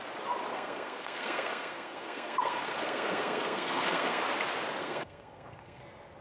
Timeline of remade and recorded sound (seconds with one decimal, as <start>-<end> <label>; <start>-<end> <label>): 0.0-0.5 recorded; 0.5-4.2 remade; 4.2-4.8 recorded; 4.8-5.8 remade; 5.8-6.2 recorded